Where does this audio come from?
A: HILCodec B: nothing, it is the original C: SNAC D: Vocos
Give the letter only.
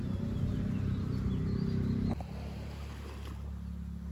B